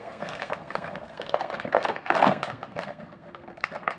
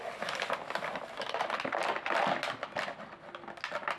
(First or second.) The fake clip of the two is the first